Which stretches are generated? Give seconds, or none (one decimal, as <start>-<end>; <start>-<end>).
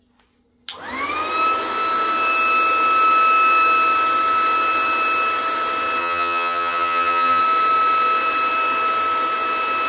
6.0-7.4